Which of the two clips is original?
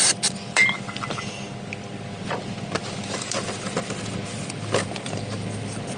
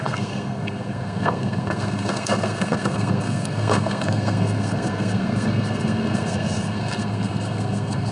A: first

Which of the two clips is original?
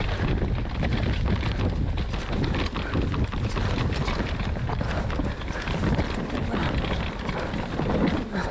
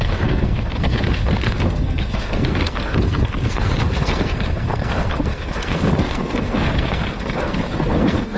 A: first